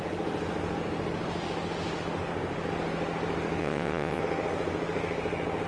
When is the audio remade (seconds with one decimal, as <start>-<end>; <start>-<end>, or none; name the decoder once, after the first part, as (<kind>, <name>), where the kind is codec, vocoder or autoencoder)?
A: 3.6-4.2 (vocoder, WaveNeXt)